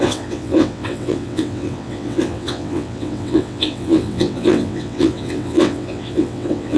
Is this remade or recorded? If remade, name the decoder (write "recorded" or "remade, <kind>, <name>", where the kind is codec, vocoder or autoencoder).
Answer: remade, vocoder, WaveNeXt